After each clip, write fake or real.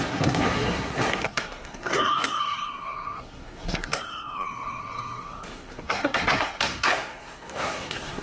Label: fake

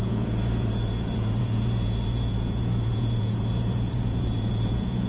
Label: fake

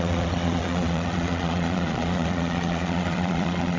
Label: fake